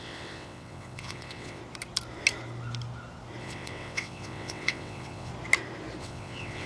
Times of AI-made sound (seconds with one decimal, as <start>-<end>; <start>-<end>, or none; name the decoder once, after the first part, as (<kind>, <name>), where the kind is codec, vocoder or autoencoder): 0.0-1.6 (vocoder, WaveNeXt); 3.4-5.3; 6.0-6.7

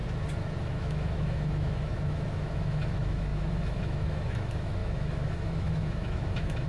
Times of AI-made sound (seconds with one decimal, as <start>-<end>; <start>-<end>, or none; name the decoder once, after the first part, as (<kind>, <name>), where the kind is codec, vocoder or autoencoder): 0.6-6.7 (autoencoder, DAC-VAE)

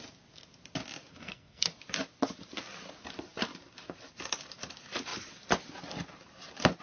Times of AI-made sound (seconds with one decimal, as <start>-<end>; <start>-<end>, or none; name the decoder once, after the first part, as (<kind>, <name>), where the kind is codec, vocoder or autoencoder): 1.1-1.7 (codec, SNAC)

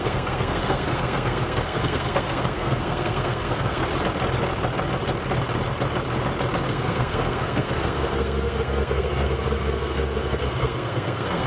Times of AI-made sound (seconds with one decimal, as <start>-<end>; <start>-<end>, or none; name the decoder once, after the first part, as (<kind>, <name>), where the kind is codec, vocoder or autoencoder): 0.0-3.8 (codec, SNAC); 6.7-11.5

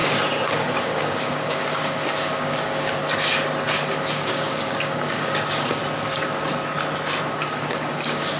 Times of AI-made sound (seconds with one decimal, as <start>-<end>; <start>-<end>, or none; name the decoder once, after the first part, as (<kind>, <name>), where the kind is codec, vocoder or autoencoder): 0.8-3.0 (codec, DAC); 3.9-5.8; 7.3-8.4

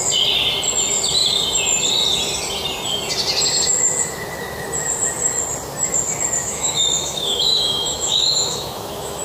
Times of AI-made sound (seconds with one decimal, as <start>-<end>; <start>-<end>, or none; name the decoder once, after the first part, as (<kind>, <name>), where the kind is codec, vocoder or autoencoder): 6.4-9.2 (autoencoder, DAC-VAE)